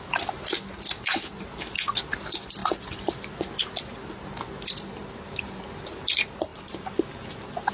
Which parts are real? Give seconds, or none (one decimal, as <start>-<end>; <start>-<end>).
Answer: 0.0-2.6; 3.4-5.0; 5.6-6.5